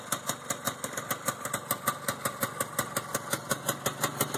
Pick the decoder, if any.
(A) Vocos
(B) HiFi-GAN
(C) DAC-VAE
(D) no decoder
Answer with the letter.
D